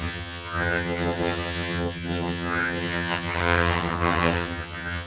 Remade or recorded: remade